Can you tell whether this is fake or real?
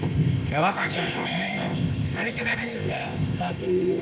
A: fake